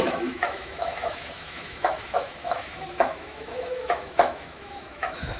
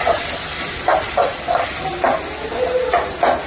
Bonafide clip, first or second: second